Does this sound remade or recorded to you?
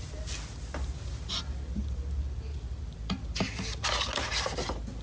recorded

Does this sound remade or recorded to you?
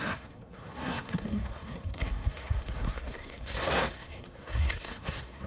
remade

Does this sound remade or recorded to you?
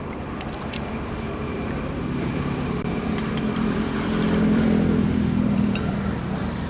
remade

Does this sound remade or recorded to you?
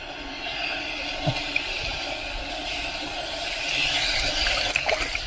remade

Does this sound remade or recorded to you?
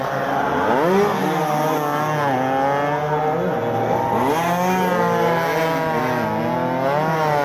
recorded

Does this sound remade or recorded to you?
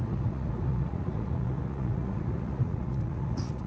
remade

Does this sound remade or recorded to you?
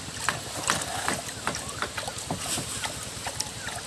recorded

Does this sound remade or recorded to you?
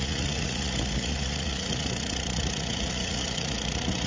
remade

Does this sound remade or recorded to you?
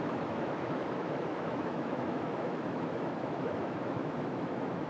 remade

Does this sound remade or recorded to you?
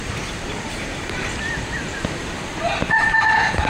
remade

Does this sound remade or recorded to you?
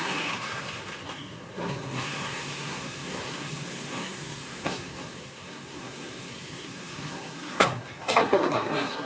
remade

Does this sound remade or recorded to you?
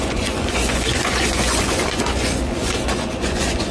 remade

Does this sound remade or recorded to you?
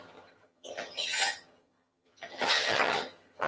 remade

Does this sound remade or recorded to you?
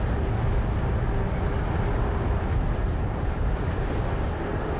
recorded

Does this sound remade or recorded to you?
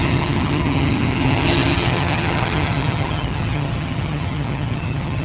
remade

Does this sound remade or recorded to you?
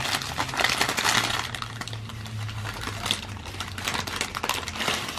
remade